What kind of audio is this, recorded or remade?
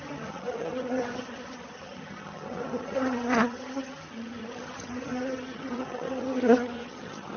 remade